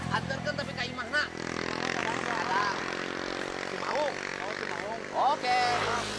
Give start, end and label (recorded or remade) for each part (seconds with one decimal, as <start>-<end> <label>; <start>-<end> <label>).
0.0-2.0 recorded; 2.0-2.8 remade; 2.8-4.3 recorded; 4.3-5.4 remade; 5.4-6.2 recorded